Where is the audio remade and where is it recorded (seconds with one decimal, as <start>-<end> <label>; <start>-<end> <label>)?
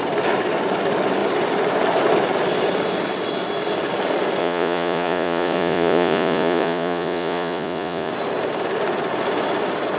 0.0-4.4 recorded; 4.4-8.1 remade; 8.1-10.0 recorded